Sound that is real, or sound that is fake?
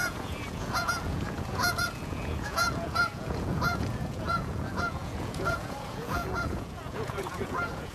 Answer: fake